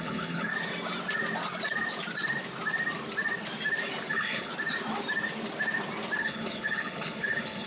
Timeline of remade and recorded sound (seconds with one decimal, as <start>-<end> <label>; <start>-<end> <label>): 0.0-0.5 remade; 0.5-4.1 recorded; 4.1-4.5 remade; 4.5-6.2 recorded; 6.2-7.7 remade